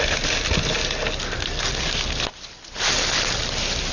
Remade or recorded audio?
recorded